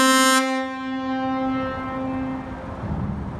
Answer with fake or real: real